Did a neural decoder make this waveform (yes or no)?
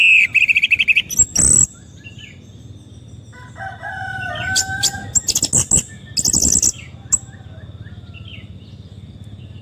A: no